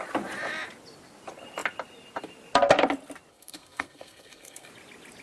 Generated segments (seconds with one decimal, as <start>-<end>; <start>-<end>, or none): 3.3-4.7